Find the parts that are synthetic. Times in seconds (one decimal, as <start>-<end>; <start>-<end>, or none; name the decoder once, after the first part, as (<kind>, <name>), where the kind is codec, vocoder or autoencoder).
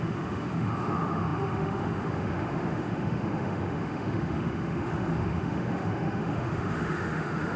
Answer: 0.0-7.6 (autoencoder, DAC-VAE)